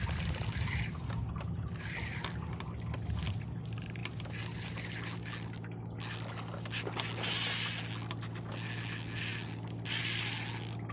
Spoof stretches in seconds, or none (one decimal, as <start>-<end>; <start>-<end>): none